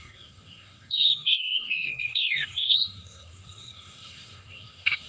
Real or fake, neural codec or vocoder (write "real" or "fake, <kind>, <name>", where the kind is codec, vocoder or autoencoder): fake, codec, SNAC